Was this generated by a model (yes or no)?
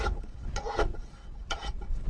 yes